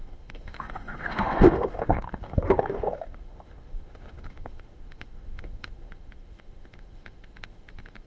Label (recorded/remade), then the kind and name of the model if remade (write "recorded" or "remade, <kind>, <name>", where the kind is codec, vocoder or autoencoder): remade, autoencoder, DAC-VAE